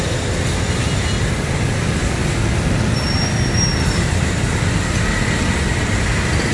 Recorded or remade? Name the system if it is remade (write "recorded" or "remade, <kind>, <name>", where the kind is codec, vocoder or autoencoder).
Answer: recorded